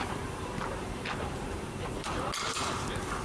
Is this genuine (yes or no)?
no